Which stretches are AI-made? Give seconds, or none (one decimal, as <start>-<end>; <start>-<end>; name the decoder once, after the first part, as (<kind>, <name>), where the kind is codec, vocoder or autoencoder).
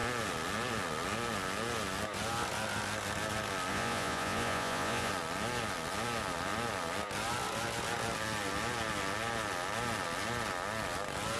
3.7-5.1 (vocoder, Vocos)